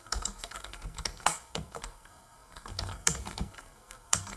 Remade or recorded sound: remade